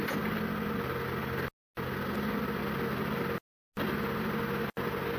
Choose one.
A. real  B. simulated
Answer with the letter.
A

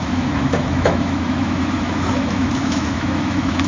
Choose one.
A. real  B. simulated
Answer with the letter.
B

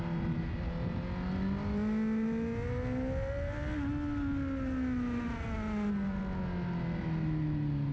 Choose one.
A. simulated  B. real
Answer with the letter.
B